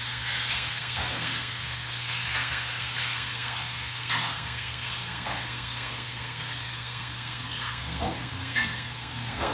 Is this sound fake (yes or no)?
yes